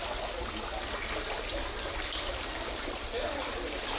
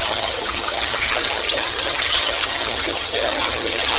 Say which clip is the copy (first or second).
second